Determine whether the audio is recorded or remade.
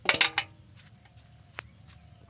recorded